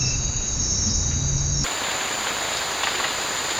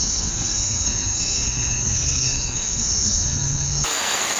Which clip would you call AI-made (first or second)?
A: second